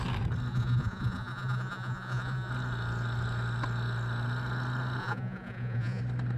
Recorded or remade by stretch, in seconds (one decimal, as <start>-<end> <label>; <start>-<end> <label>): 0.0-0.5 recorded; 0.5-2.5 remade; 2.5-5.0 recorded; 5.0-6.0 remade; 6.0-6.4 recorded

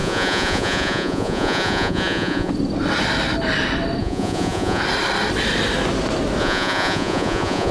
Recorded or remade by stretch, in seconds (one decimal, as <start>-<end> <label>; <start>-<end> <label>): 0.0-2.5 remade; 2.5-4.0 recorded; 4.0-4.8 remade; 4.8-6.4 recorded; 6.4-7.7 remade